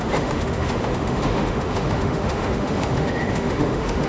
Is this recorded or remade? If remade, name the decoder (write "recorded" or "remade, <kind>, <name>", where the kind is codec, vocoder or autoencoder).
remade, autoencoder, DAC-VAE